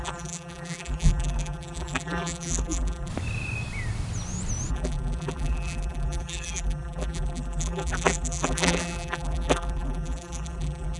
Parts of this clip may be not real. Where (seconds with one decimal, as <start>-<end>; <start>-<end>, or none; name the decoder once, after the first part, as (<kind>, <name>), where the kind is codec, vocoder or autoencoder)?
0.0-3.1 (vocoder, BigVGAN v2); 4.7-11.0